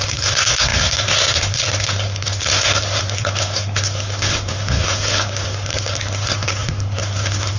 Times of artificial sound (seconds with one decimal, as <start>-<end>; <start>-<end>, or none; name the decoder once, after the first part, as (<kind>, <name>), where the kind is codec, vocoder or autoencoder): 0.0-7.6 (codec, SNAC)